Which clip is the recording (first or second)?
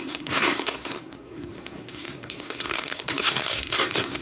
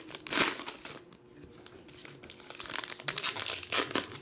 second